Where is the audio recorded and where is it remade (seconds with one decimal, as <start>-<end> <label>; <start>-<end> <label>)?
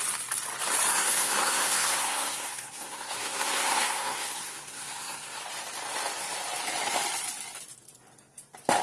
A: 0.0-0.9 recorded; 0.9-5.4 remade; 5.4-8.8 recorded